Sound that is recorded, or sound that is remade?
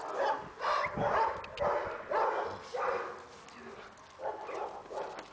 recorded